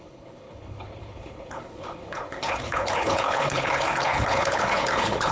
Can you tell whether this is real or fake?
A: fake